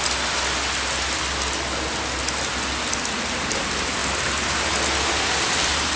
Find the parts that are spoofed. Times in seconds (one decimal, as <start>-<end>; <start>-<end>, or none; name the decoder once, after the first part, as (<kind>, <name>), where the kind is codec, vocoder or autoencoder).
none